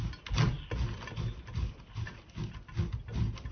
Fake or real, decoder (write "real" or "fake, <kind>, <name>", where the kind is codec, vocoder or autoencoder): real